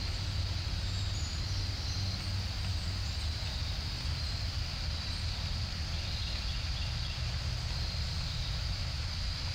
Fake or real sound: real